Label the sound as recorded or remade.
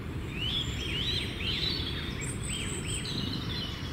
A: remade